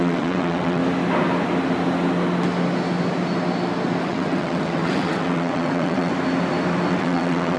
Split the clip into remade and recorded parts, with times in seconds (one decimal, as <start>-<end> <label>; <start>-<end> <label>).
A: 0.0-0.8 remade; 0.8-4.0 recorded; 4.0-6.1 remade; 6.1-6.9 recorded; 6.9-7.6 remade